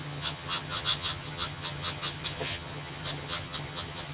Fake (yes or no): yes